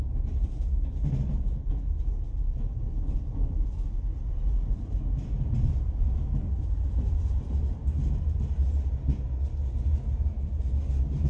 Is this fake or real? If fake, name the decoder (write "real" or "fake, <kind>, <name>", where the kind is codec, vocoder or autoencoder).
real